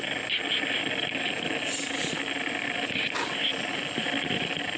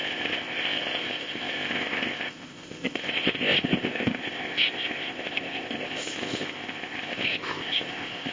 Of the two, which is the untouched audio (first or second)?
first